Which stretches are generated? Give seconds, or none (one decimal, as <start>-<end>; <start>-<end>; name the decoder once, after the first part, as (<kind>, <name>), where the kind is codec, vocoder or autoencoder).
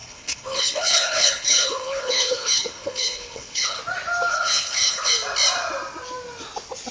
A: 0.0-3.8 (codec, HILCodec); 4.3-5.1